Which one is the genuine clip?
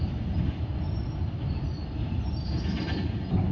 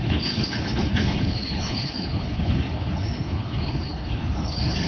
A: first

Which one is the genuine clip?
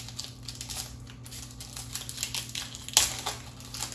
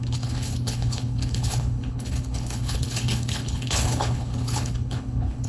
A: first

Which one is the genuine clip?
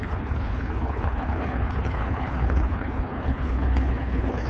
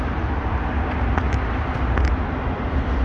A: second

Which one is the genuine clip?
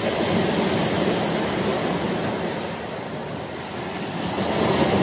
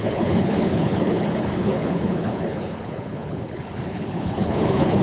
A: first